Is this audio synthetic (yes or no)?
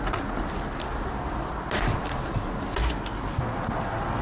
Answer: no